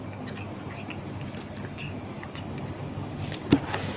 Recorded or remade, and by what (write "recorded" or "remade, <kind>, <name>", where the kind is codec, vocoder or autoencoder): recorded